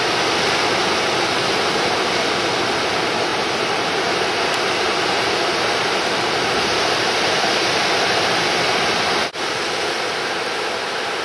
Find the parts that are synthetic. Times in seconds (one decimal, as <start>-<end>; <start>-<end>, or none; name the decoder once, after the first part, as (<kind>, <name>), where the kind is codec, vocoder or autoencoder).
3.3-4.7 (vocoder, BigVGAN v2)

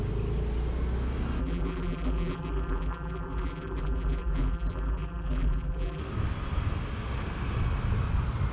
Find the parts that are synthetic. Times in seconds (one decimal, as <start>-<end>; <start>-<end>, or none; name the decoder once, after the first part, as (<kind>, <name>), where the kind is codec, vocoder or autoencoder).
1.4-6.0 (vocoder, BigVGAN v2)

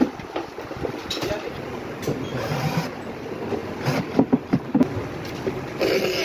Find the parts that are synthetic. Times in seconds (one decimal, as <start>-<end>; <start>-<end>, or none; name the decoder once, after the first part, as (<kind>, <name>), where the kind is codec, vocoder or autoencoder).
2.3-3.0 (vocoder, BigVGAN v2)